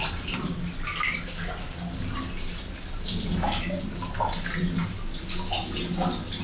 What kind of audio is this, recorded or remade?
recorded